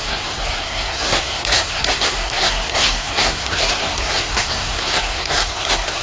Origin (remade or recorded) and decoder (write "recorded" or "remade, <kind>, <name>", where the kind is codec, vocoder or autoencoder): remade, codec, SNAC